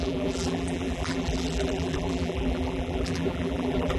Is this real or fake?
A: fake